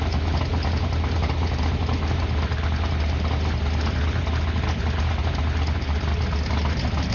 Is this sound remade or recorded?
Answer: recorded